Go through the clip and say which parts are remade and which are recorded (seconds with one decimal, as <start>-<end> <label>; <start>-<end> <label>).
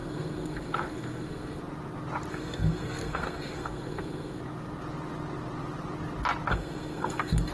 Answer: 0.0-1.6 remade; 1.6-2.3 recorded; 2.3-4.4 remade; 4.4-6.5 recorded; 6.5-7.5 remade